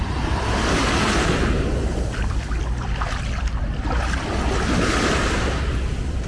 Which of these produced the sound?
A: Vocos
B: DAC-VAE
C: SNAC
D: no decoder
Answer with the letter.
D